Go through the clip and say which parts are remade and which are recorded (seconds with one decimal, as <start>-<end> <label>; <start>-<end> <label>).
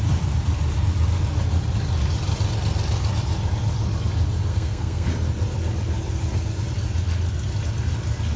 0.0-4.5 recorded; 4.5-5.1 remade; 5.1-8.4 recorded